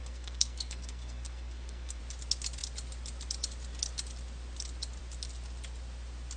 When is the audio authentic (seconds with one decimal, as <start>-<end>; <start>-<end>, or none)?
2.0-6.4